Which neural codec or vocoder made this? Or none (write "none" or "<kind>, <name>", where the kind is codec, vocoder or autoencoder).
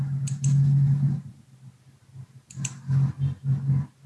none